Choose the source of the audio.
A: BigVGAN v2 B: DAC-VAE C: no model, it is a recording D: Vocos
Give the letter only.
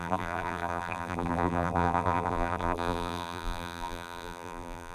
A